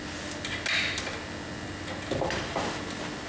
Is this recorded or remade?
recorded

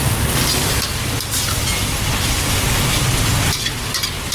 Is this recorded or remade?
recorded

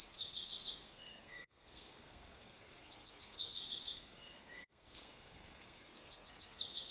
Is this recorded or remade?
remade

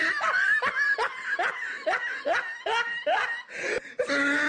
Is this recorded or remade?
recorded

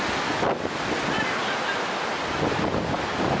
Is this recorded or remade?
recorded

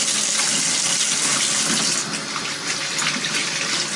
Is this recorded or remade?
recorded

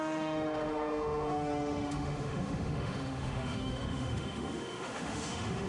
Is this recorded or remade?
remade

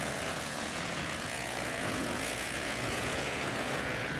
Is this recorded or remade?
remade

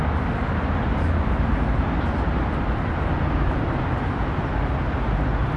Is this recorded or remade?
recorded